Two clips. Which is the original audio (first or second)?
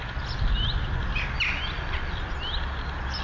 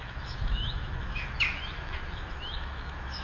first